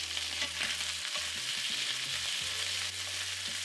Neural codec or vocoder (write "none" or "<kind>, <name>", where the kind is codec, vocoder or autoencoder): none